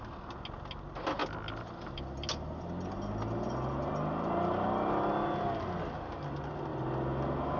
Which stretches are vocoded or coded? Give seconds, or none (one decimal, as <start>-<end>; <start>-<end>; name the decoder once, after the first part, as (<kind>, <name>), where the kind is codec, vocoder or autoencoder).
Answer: none